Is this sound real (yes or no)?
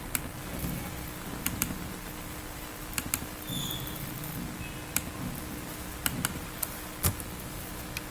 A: yes